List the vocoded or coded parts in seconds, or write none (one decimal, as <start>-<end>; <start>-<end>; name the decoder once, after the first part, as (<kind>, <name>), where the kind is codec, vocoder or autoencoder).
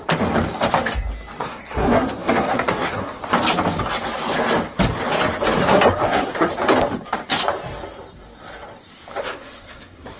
1.4-3.2 (codec, SNAC); 5.6-6.5; 9.2-10.2